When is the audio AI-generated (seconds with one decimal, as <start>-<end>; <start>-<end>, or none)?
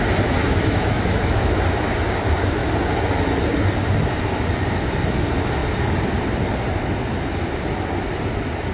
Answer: 0.4-1.5